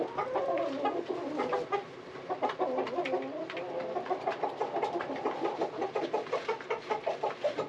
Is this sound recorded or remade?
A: recorded